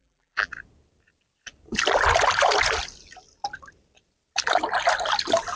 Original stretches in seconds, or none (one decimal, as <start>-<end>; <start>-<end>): 0.5-5.6